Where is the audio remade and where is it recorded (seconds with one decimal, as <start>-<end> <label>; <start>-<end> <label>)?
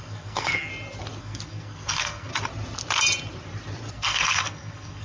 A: 0.0-0.7 remade; 0.7-1.2 recorded; 1.2-2.3 remade; 2.3-3.9 recorded; 3.9-5.0 remade